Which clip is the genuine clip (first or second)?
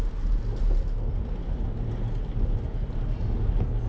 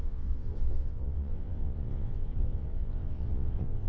first